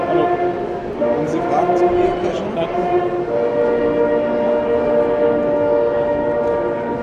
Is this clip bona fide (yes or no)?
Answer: yes